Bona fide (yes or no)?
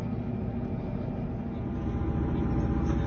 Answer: yes